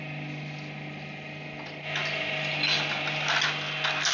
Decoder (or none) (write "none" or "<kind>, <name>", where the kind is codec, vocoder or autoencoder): none